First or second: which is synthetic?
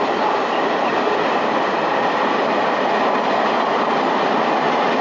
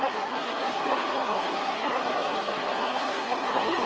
second